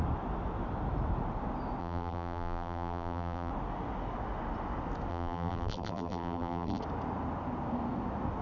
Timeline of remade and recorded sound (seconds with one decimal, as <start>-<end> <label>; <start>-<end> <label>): 0.0-1.8 recorded; 1.8-3.5 remade; 3.5-5.1 recorded; 5.1-6.8 remade; 6.8-8.4 recorded